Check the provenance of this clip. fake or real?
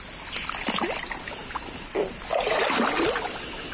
real